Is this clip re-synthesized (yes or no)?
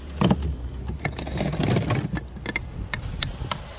no